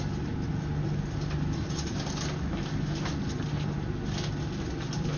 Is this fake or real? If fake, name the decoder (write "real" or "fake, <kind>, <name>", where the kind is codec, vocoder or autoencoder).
real